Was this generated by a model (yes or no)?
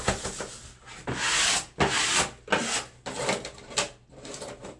no